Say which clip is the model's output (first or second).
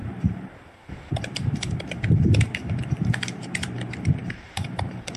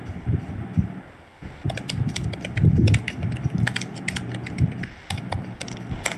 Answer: first